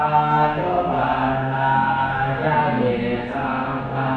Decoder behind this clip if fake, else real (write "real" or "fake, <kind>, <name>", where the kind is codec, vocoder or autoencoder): fake, codec, SNAC